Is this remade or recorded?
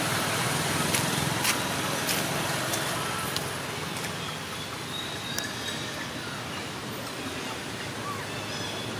recorded